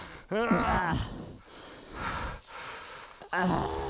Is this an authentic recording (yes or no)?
yes